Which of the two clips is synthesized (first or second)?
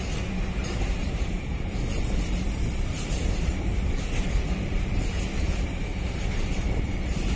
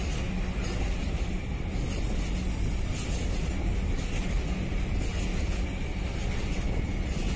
first